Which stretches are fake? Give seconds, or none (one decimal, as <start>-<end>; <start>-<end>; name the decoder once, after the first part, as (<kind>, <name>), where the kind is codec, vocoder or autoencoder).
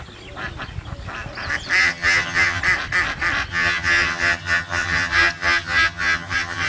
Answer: 1.8-2.6 (vocoder, HiFi-GAN); 3.5-6.7